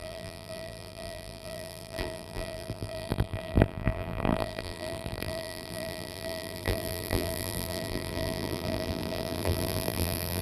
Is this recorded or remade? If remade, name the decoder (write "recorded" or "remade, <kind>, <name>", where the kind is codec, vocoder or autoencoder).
remade, vocoder, BigVGAN v2